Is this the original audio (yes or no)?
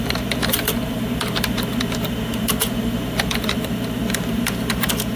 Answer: no